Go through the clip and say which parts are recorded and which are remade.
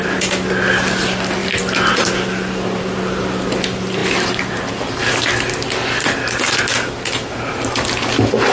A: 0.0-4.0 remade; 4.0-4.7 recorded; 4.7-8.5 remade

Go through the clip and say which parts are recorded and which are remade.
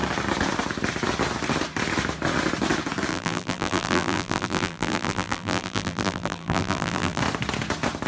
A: 0.0-3.1 recorded; 3.1-7.2 remade; 7.2-8.1 recorded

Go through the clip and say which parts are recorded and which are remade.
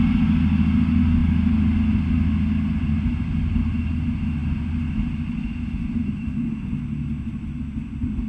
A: 0.0-8.3 recorded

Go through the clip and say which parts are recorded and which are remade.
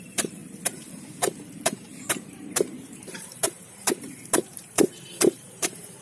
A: 0.0-6.0 remade